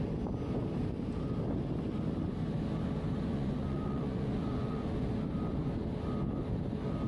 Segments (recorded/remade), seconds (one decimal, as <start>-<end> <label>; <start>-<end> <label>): 0.0-3.3 recorded; 3.3-5.1 remade; 5.1-7.1 recorded